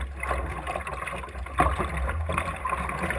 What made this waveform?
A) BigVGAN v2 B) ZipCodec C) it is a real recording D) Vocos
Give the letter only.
C